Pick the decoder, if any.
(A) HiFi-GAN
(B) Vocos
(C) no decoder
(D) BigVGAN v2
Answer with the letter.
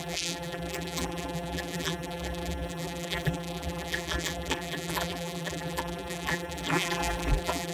D